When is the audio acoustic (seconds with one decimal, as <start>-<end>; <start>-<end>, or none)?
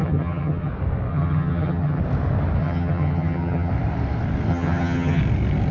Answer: 0.7-1.1; 2.0-2.6; 3.7-4.5; 5.2-5.7